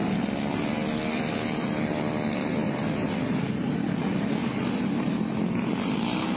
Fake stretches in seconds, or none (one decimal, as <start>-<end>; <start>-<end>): none